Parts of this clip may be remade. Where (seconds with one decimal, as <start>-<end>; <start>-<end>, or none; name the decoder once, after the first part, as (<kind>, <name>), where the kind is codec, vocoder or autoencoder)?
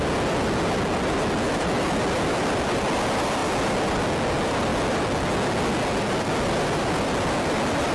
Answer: none